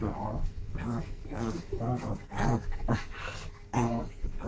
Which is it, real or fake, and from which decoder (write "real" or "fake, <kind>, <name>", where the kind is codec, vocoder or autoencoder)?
fake, codec, SNAC